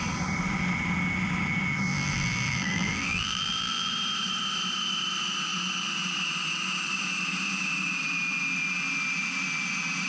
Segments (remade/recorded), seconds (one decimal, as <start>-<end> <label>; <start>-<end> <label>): 0.0-1.9 recorded; 1.9-3.9 remade; 3.9-10.1 recorded